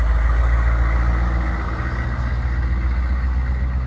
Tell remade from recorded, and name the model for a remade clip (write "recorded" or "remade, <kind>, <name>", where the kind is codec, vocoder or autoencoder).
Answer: recorded